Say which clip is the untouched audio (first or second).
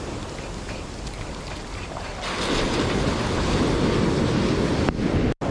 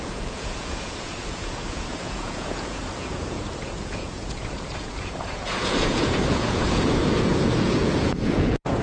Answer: first